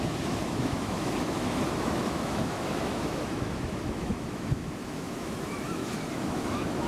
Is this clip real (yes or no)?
no